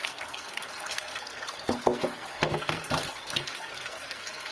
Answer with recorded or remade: remade